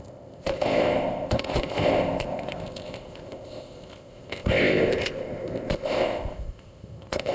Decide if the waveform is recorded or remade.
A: remade